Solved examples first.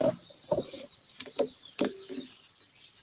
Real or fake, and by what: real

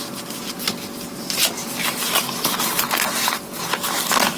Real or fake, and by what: real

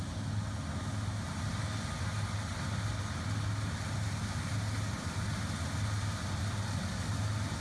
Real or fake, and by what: real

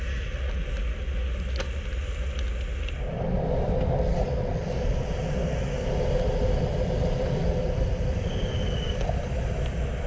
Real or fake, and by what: real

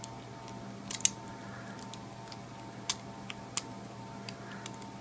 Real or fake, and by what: real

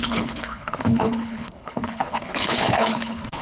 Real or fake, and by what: fake, codec, HILCodec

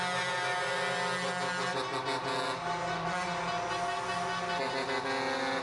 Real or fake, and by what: real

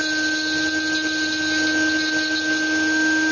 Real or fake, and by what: real